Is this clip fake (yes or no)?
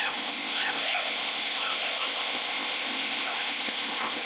yes